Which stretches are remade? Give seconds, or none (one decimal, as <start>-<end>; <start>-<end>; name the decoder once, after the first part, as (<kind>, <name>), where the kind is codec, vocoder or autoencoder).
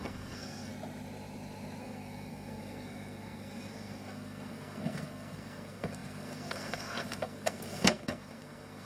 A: 0.0-0.7 (codec, SNAC); 1.8-8.9